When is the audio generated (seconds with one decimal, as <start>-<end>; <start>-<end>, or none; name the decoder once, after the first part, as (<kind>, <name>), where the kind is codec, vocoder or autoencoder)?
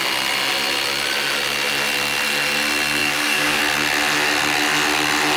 3.0-3.6 (codec, DAC)